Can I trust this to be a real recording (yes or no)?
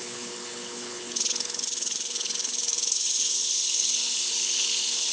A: no